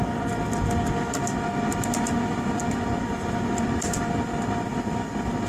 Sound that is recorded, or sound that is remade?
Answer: recorded